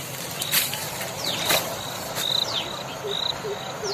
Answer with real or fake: real